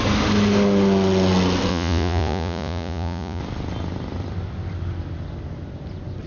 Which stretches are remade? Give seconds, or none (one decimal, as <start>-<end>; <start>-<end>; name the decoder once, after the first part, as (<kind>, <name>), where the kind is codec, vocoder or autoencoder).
1.7-3.4 (vocoder, Vocos)

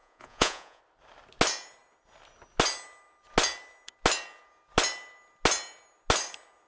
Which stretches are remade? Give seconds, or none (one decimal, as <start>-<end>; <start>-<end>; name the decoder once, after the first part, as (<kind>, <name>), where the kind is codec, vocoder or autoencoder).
0.0-0.8 (vocoder, Vocos)